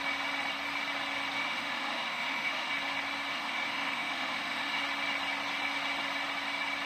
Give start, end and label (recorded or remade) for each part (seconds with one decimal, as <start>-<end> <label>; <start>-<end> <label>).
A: 0.0-1.4 recorded; 1.4-2.7 remade; 2.7-3.3 recorded; 3.3-4.8 remade; 4.8-6.9 recorded